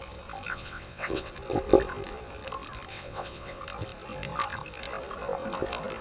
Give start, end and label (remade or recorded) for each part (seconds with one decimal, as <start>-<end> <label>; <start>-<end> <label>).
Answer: 0.0-0.5 recorded; 0.5-1.3 remade; 1.3-2.9 recorded; 2.9-3.6 remade; 3.6-6.0 recorded

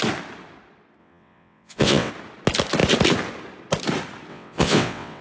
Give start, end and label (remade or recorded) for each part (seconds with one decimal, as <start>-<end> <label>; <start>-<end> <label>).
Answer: 0.0-1.0 recorded; 1.0-2.1 remade; 2.1-4.3 recorded; 4.3-5.2 remade

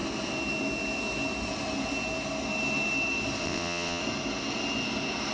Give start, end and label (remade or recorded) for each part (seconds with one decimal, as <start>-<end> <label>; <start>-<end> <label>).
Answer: 0.0-3.4 recorded; 3.4-4.0 remade; 4.0-5.3 recorded